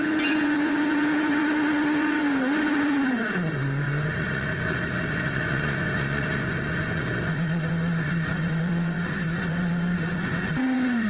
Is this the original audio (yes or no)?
no